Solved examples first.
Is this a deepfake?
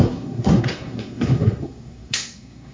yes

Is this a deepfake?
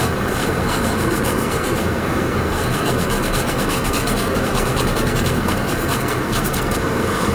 yes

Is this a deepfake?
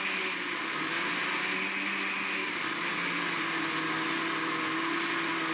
no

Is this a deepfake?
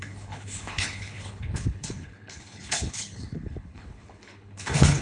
yes